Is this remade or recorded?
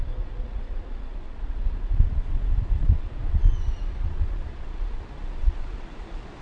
remade